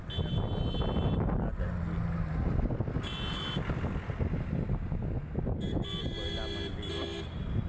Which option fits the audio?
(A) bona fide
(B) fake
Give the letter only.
A